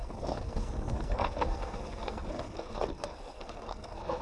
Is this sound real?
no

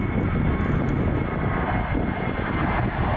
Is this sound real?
yes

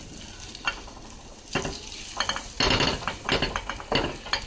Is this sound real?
yes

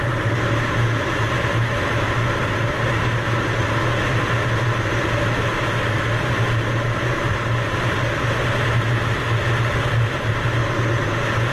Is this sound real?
yes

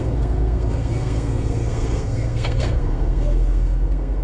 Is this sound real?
no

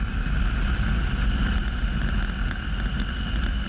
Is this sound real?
yes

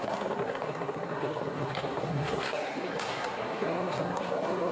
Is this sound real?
no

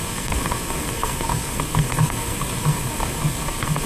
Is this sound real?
no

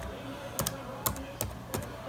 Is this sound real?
yes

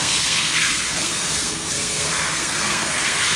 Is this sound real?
no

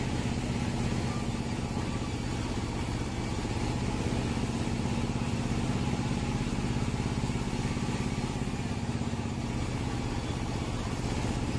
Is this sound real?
yes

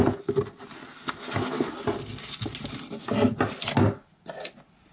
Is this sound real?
yes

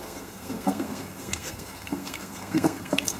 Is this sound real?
no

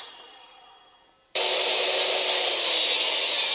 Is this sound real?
yes